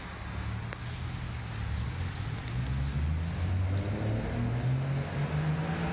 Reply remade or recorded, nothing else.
recorded